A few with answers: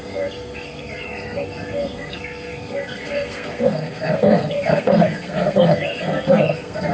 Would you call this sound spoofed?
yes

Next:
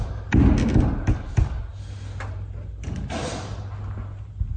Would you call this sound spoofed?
no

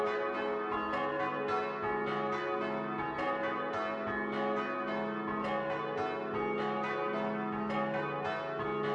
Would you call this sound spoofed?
no